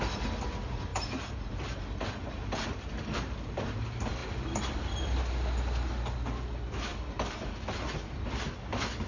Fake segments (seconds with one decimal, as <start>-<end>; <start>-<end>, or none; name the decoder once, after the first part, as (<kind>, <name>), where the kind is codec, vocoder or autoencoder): 4.2-5.2 (vocoder, BigVGAN v2)